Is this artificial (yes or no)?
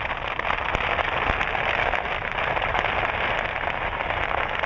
no